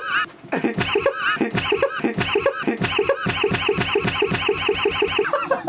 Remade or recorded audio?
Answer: recorded